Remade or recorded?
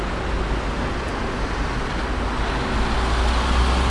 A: recorded